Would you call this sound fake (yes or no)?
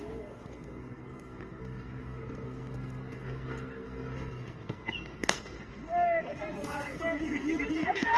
yes